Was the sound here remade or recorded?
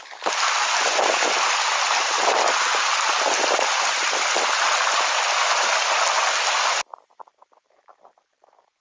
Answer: recorded